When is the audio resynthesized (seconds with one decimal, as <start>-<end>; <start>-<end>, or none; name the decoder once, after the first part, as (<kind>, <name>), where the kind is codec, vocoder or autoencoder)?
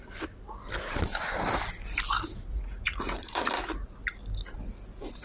2.3-3.5 (vocoder, Vocos)